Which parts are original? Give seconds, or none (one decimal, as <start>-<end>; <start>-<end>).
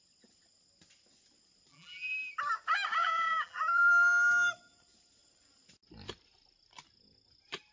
0.0-1.7; 2.3-3.0; 3.9-7.7